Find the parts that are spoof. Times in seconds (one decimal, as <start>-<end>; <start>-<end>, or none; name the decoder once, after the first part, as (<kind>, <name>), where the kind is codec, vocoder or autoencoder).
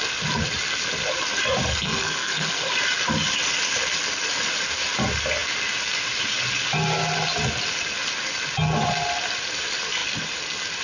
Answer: 1.6-2.7 (codec, SNAC)